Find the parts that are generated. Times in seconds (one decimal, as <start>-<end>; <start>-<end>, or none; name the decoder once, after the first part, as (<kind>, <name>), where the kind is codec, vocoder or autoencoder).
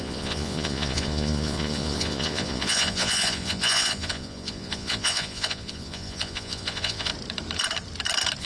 0.0-7.1 (vocoder, Vocos)